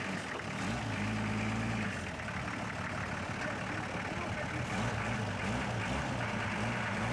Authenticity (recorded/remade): recorded